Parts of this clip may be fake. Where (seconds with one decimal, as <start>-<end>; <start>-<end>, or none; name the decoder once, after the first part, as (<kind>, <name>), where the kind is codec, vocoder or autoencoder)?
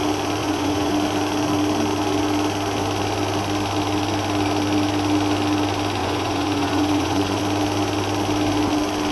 0.4-0.9 (vocoder, Vocos); 6.0-7.4